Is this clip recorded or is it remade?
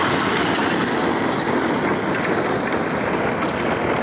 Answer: recorded